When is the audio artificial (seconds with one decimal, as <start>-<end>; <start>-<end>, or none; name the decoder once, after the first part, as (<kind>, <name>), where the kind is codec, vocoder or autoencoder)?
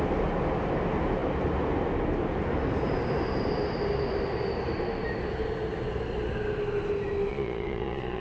7.3-8.2 (vocoder, Vocos)